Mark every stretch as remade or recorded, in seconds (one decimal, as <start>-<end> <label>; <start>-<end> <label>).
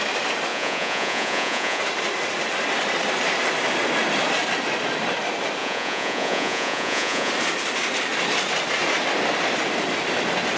0.0-0.5 recorded; 0.5-1.8 remade; 1.8-5.6 recorded; 5.6-7.3 remade; 7.3-10.6 recorded